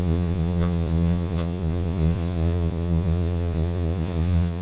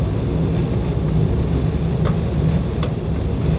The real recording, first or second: second